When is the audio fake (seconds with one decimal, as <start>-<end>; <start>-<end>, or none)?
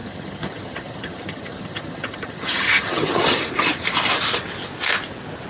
0.0-3.3